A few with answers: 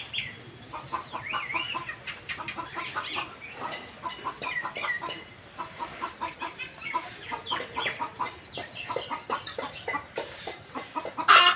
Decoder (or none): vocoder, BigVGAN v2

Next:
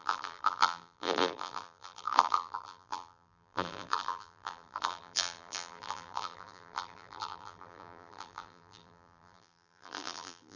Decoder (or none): vocoder, BigVGAN v2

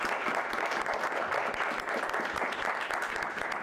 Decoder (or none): vocoder, BigVGAN v2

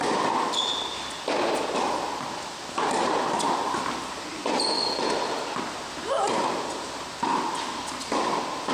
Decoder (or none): none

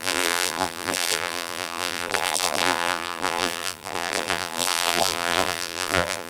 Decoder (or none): vocoder, BigVGAN v2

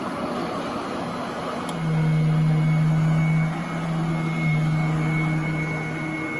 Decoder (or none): none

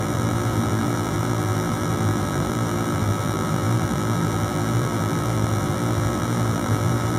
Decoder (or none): vocoder, BigVGAN v2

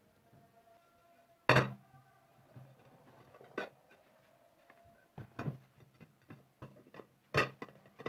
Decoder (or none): none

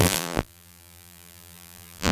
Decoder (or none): vocoder, BigVGAN v2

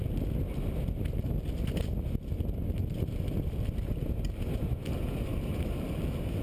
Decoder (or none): none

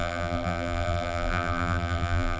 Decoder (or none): vocoder, BigVGAN v2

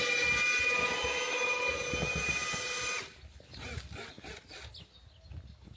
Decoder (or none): none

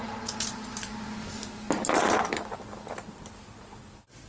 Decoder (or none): none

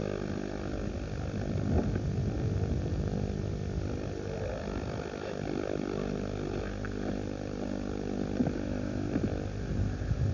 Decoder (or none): none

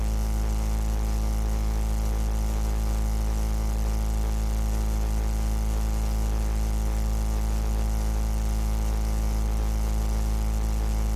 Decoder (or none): none